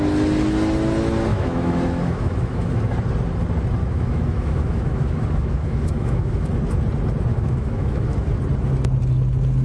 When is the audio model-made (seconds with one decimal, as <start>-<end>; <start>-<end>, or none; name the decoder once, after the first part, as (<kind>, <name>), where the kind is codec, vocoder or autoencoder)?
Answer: 1.3-2.9 (autoencoder, DAC-VAE); 3.8-6.5; 7.3-8.3